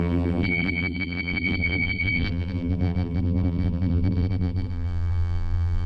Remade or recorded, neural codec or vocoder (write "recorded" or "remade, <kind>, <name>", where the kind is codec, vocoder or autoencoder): remade, vocoder, BigVGAN v2